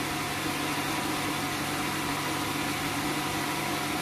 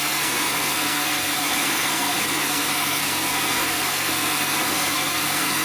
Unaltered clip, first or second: first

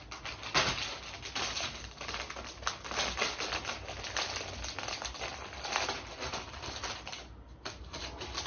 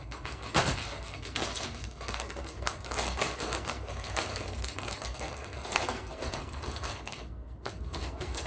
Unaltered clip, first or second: first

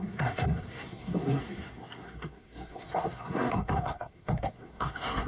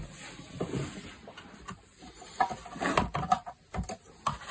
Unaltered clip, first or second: second